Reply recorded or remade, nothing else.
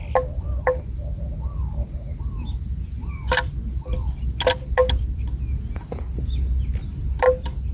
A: recorded